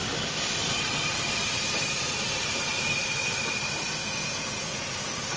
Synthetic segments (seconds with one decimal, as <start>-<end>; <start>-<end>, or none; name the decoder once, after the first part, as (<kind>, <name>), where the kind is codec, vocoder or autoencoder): 4.0-4.9 (vocoder, Vocos)